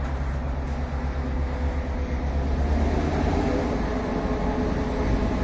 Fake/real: real